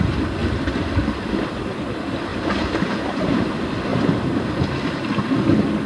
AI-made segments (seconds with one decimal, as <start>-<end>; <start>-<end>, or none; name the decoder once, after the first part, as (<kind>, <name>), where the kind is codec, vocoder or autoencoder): 2.3-3.5 (vocoder, BigVGAN v2); 3.9-4.7